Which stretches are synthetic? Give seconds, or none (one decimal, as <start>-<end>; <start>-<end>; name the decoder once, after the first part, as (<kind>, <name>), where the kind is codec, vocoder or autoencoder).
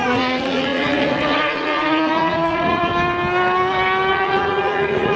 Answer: 0.0-2.9 (vocoder, Vocos); 4.1-5.2